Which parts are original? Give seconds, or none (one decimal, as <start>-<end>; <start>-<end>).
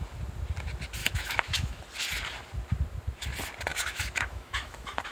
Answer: 0.0-1.0; 1.8-3.7